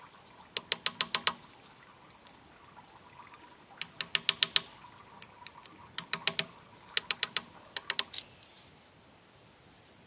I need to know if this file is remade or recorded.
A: recorded